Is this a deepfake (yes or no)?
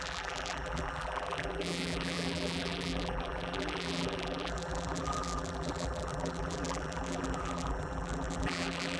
yes